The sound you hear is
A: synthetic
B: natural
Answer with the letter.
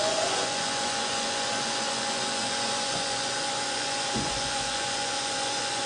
A